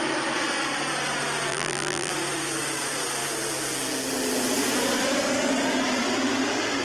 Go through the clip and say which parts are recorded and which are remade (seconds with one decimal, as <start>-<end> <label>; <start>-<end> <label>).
0.0-1.5 recorded; 1.5-2.1 remade; 2.1-6.8 recorded